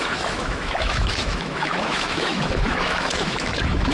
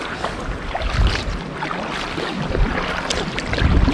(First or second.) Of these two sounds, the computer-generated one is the first